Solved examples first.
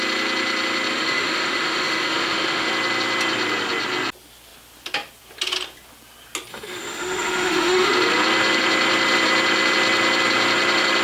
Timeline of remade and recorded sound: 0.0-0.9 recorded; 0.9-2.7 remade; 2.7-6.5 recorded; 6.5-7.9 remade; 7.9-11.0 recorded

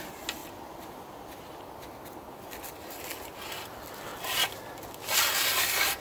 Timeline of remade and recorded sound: 0.0-6.0 recorded